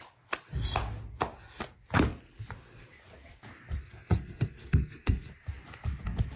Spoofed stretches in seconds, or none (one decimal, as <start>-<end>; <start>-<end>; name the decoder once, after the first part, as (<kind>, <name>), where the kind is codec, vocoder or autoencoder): 3.8-5.3 (codec, SNAC)